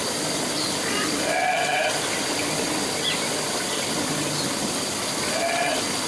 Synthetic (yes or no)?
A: no